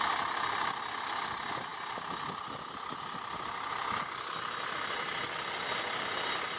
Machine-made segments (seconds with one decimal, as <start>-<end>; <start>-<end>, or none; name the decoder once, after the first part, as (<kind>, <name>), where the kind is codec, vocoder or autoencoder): none